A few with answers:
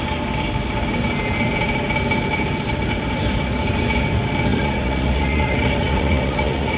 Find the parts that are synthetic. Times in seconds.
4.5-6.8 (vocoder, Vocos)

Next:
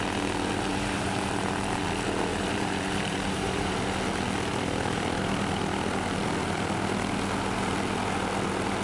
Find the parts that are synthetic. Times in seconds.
0.7-1.8 (vocoder, BigVGAN v2); 2.3-3.7; 4.5-5.2

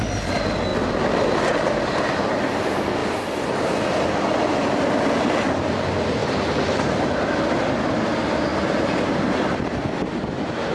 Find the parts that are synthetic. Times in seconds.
0.7-1.5 (vocoder, BigVGAN v2); 3.0-4.1; 6.2-9.9

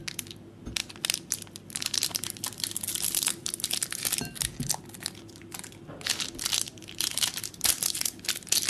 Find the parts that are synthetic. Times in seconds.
6.8-7.5 (vocoder, BigVGAN v2)

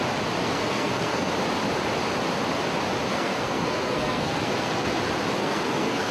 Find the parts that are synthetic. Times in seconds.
0.4-1.3 (codec, SNAC); 3.1-5.0; 5.4-6.1

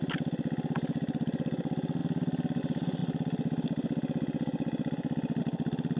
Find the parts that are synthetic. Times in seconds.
none

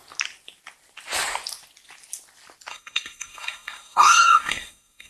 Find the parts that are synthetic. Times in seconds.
2.7-5.1 (codec, SNAC)

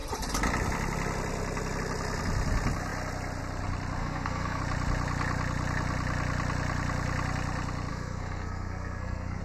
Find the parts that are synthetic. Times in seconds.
4.0-4.6 (codec, SNAC); 7.9-9.4